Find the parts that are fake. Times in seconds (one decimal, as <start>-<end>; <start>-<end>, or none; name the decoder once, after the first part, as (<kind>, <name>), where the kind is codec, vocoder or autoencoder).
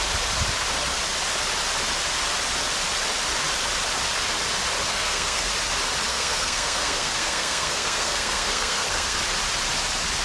4.9-5.5 (codec, SNAC); 6.1-9.2